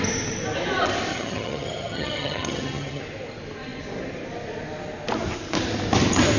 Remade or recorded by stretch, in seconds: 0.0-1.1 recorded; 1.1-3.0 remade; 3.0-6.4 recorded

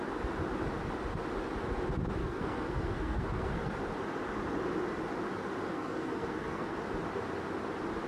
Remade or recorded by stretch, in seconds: 0.0-2.2 recorded; 2.2-3.8 remade; 3.8-5.7 recorded; 5.7-6.8 remade; 6.8-8.1 recorded

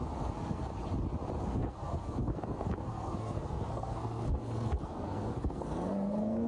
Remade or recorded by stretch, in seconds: 0.0-0.7 remade; 0.7-1.4 recorded; 1.4-6.5 remade

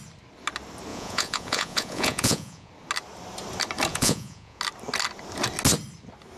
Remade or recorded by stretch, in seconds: 0.0-0.9 recorded; 0.9-2.7 remade; 2.7-3.9 recorded; 3.9-4.6 remade; 4.6-6.4 recorded

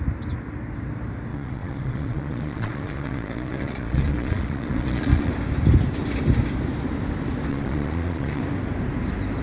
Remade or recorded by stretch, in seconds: 0.0-1.3 recorded; 1.3-5.3 remade; 5.3-7.5 recorded; 7.5-8.4 remade; 8.4-9.4 recorded

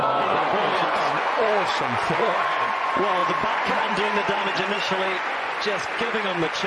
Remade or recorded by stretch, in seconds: 0.0-6.7 remade

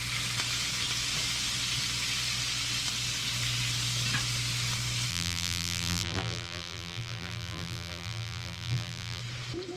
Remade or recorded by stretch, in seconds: 0.0-5.1 recorded; 5.1-9.2 remade; 9.2-9.8 recorded